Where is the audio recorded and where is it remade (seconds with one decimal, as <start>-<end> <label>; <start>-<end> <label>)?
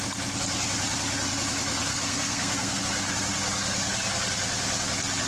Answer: 0.0-1.9 recorded; 1.9-2.8 remade; 2.8-5.3 recorded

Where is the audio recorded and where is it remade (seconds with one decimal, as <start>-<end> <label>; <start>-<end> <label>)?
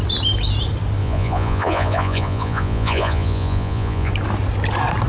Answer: 0.0-1.0 recorded; 1.0-4.1 remade; 4.1-5.1 recorded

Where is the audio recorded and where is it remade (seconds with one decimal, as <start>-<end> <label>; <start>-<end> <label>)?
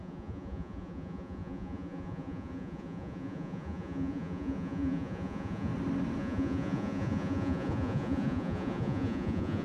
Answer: 0.0-5.7 remade; 5.7-6.2 recorded; 6.2-9.6 remade